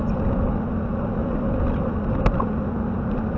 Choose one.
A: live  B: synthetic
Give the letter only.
A